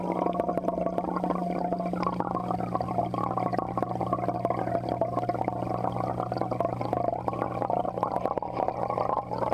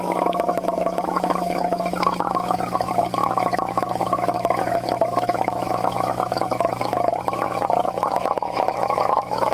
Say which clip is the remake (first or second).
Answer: second